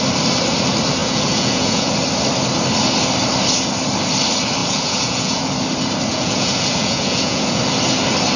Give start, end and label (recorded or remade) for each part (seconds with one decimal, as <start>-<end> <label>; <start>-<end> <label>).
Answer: 0.0-1.0 recorded; 1.0-1.9 remade; 1.9-4.6 recorded; 4.6-5.5 remade; 5.5-6.1 recorded; 6.1-7.6 remade; 7.6-8.4 recorded